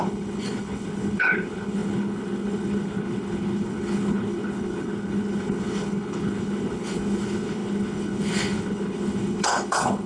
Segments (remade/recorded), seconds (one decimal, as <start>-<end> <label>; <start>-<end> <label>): 0.0-10.1 remade